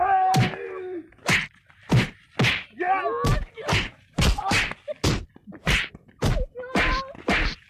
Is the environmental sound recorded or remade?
recorded